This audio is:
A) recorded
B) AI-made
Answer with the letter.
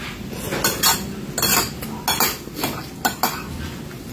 A